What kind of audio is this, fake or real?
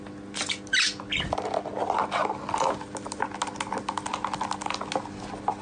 real